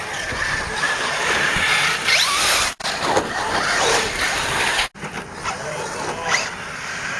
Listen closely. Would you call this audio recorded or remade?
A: recorded